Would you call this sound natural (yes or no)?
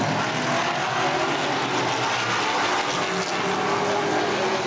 yes